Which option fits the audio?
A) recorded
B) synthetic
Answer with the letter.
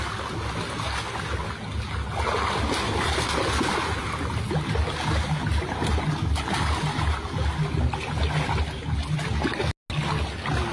A